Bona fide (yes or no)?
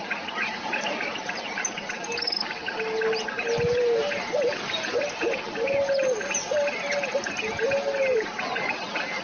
yes